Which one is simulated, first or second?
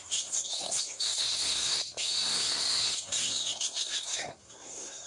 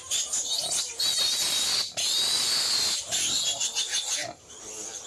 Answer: first